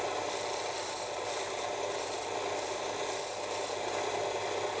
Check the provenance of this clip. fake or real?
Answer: real